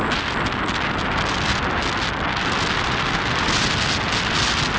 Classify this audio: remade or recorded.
recorded